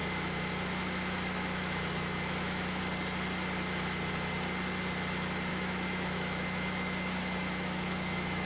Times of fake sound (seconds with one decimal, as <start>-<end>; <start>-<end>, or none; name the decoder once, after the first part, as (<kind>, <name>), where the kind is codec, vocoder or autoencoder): 0.0-2.8 (autoencoder, DAC-VAE); 5.5-8.5

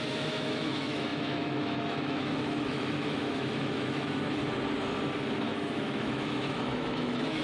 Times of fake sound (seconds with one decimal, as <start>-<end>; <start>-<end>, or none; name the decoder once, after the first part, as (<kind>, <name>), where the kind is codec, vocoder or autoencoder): 0.0-4.4 (autoencoder, DAC-VAE); 5.4-7.4

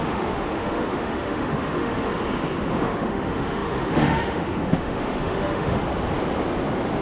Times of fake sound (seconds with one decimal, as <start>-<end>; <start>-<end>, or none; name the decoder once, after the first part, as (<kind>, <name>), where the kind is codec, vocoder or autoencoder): 0.0-2.1 (autoencoder, DAC-VAE); 2.7-5.8

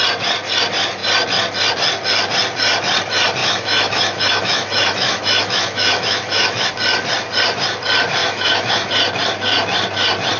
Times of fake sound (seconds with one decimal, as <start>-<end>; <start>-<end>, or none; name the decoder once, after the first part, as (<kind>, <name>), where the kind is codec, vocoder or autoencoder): 3.4-6.7 (autoencoder, DAC-VAE); 8.2-8.9

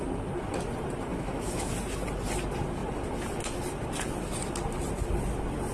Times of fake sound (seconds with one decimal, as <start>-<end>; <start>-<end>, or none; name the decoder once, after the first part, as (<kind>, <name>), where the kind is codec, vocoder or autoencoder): 1.1-1.7 (autoencoder, DAC-VAE)